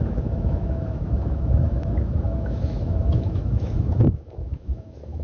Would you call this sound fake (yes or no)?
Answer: yes